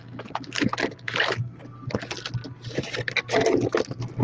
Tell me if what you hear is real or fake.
real